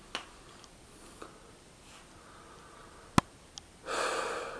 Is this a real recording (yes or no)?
yes